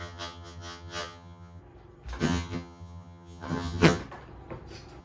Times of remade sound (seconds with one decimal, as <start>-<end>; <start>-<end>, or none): 0.0-1.6; 2.2-4.0